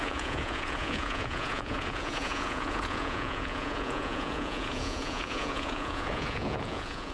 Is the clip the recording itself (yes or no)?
no